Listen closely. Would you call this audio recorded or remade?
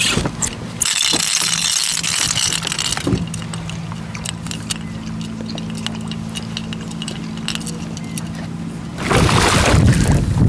recorded